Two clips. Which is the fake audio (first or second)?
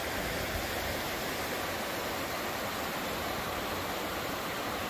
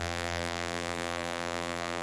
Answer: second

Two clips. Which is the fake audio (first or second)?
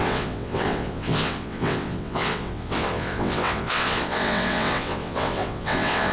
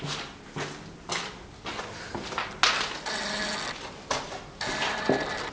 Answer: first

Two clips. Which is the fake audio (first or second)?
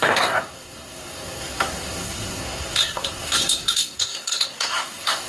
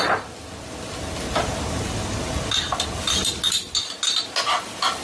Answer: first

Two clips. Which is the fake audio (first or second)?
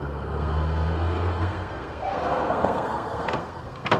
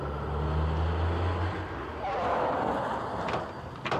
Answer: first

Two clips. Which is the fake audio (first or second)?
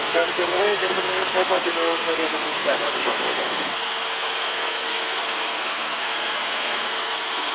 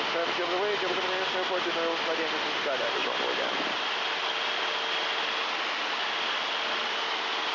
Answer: first